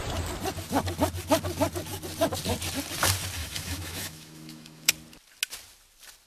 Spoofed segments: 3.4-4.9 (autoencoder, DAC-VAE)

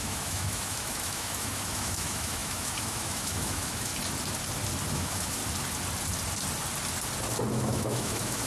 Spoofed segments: 0.0-3.9 (autoencoder, DAC-VAE); 4.9-5.4; 7.5-8.5

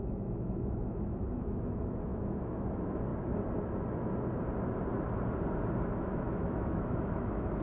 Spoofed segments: 0.0-3.1 (autoencoder, DAC-VAE); 5.9-7.6

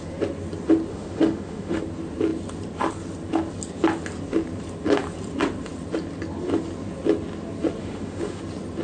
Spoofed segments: 0.9-1.8 (autoencoder, DAC-VAE); 7.8-8.4

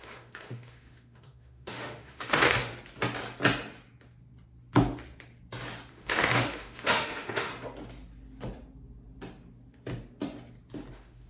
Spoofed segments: 0.0-2.7 (autoencoder, DAC-VAE); 5.9-7.5; 10.9-11.3